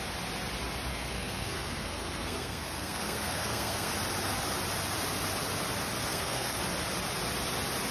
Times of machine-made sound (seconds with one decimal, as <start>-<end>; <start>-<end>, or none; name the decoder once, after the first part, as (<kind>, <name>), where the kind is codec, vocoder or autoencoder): 0.9-3.9 (codec, SNAC); 6.1-6.6